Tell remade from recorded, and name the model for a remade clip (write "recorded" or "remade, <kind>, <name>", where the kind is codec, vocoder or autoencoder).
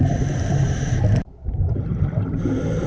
recorded